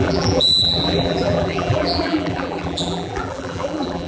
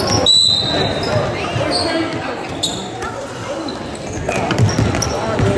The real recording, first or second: second